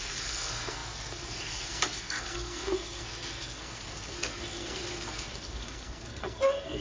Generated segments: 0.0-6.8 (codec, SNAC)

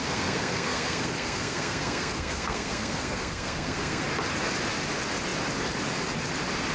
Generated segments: 0.0-4.0 (codec, SNAC)

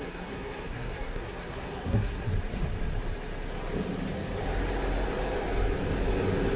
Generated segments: 0.0-2.3 (codec, SNAC)

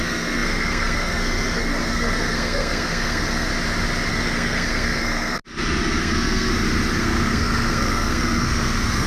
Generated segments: 0.0-3.5 (codec, SNAC); 4.1-5.4; 6.0-6.5; 7.0-9.1

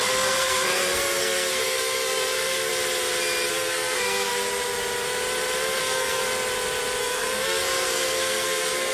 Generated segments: 0.0-2.7 (codec, SNAC); 3.5-4.3; 5.8-6.2; 7.0-8.9